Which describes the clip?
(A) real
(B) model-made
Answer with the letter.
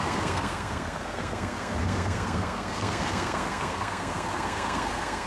B